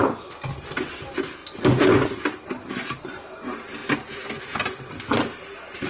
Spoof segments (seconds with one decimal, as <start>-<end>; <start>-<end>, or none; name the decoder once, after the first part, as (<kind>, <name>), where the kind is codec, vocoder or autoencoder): none